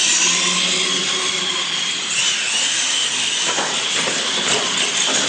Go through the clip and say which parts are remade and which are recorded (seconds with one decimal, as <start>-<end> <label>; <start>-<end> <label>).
0.0-5.3 recorded